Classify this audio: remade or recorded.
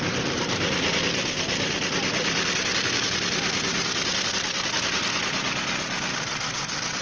recorded